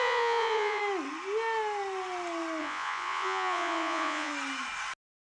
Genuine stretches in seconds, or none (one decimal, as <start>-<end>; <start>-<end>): 0.8-2.6; 4.3-5.3